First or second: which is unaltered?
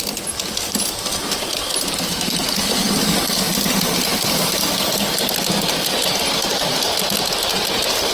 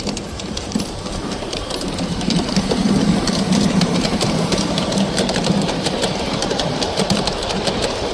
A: first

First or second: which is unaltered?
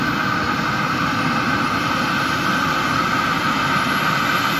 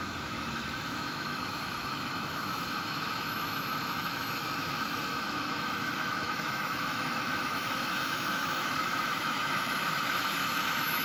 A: first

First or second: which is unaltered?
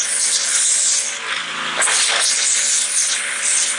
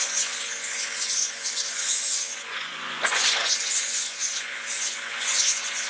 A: first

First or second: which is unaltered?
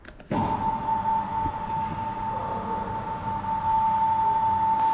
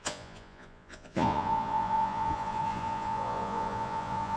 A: first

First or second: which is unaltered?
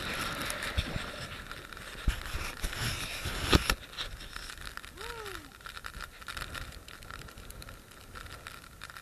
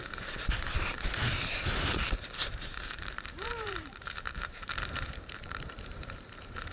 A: first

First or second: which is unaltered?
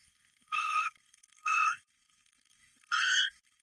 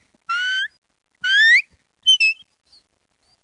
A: second